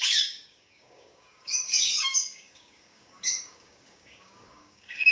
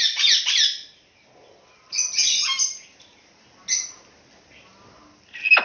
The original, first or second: second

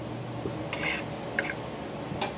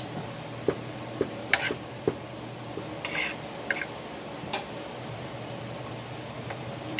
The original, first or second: first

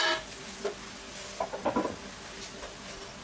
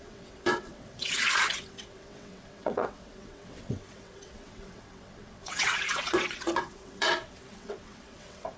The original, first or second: first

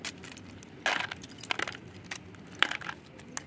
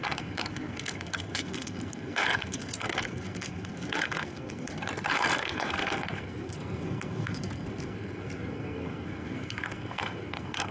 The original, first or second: first